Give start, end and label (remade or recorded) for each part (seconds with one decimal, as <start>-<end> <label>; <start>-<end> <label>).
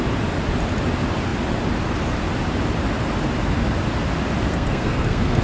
0.0-4.5 recorded; 4.5-5.4 remade